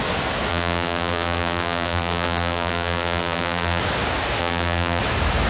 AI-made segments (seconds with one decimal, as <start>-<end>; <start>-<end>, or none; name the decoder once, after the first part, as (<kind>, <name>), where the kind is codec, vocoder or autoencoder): 0.5-3.8 (vocoder, BigVGAN v2); 4.4-5.0